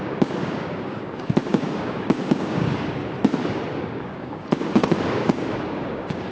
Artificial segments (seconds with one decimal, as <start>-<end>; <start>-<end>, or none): 0.0-3.0; 3.8-6.3